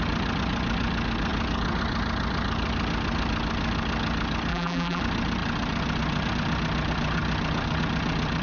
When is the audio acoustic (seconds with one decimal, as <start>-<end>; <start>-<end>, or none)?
0.0-4.5; 5.0-8.4